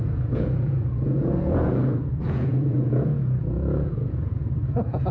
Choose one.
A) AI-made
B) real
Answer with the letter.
A